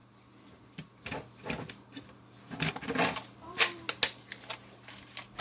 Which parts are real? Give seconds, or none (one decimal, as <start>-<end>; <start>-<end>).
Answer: 0.0-5.4